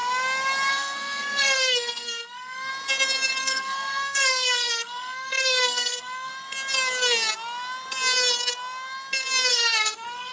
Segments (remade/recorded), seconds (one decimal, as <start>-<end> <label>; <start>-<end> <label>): 0.0-0.7 recorded; 0.7-2.7 remade; 2.7-3.4 recorded; 3.4-6.3 remade; 6.3-9.5 recorded; 9.5-10.3 remade